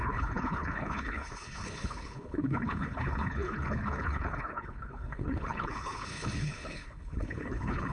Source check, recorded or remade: remade